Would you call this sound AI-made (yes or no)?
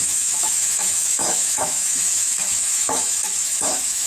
yes